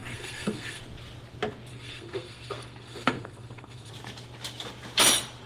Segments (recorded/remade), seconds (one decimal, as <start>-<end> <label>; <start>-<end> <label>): 0.0-0.8 remade; 0.8-1.7 recorded; 1.7-3.9 remade; 3.9-5.5 recorded